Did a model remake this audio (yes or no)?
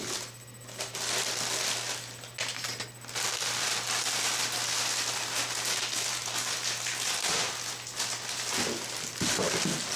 no